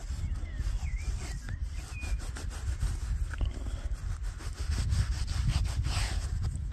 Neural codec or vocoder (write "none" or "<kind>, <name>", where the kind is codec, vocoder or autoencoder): none